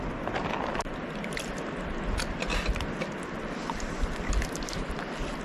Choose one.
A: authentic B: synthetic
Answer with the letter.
A